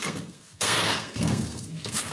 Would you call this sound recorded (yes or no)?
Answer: no